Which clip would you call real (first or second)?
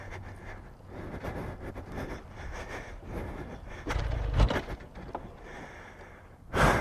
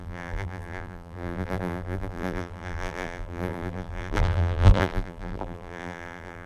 first